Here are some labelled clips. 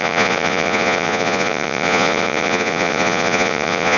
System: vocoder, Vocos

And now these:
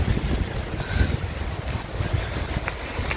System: none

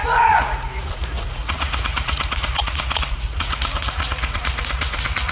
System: vocoder, Vocos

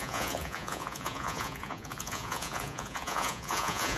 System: vocoder, Vocos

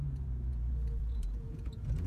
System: vocoder, Vocos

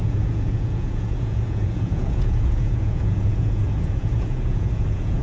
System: vocoder, Vocos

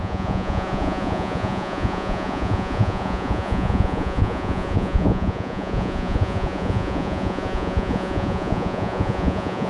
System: vocoder, Vocos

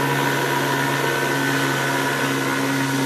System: none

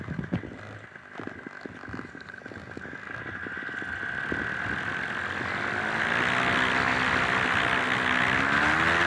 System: none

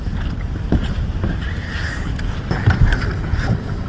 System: none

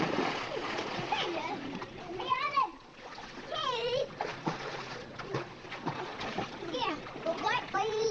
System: vocoder, Vocos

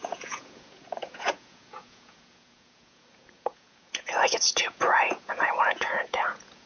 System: vocoder, Vocos